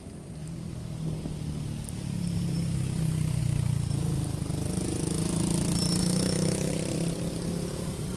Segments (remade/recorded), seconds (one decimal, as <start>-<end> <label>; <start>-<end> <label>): 0.0-6.0 recorded; 6.0-6.7 remade; 6.7-8.2 recorded